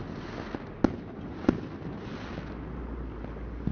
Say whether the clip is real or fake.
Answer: real